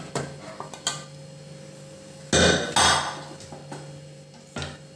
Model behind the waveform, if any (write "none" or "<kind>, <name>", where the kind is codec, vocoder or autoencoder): none